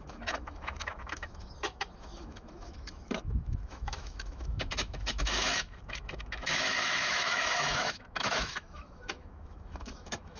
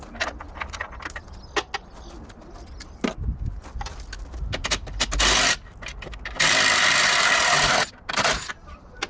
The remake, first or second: first